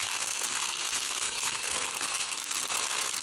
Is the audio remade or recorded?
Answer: remade